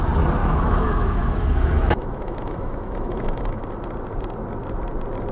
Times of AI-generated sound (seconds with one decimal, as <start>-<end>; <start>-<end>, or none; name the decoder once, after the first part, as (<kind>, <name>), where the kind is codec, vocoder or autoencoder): 0.4-3.6 (autoencoder, DAC-VAE)